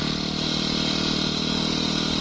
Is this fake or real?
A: real